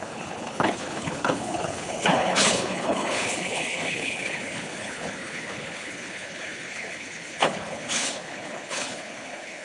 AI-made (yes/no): yes